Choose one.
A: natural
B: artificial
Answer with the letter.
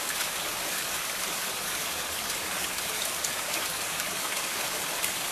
B